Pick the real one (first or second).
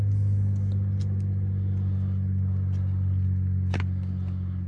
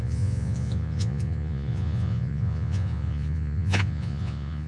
first